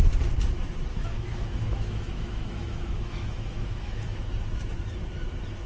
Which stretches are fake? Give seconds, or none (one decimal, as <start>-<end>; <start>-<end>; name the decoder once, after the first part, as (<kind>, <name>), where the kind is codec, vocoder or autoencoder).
0.9-4.3 (autoencoder, DAC-VAE)